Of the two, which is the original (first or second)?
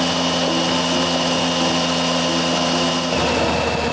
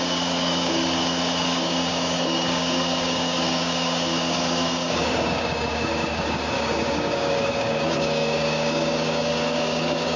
first